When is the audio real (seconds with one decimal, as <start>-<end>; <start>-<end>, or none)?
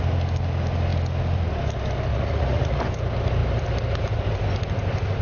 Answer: 0.0-2.1; 2.8-5.2